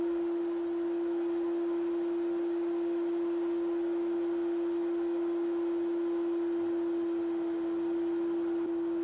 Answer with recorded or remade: recorded